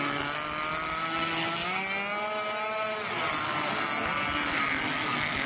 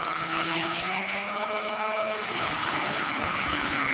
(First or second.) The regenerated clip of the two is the second